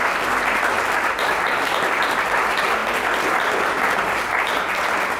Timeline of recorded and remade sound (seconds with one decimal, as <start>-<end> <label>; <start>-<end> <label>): 0.0-2.8 remade; 2.8-3.6 recorded; 3.6-5.2 remade